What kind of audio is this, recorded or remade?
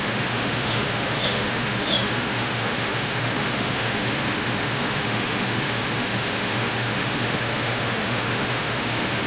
remade